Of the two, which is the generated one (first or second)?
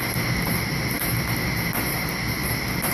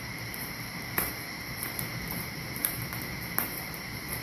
second